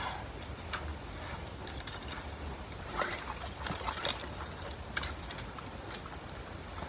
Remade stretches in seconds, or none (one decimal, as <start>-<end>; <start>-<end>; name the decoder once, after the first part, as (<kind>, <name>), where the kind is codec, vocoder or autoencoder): none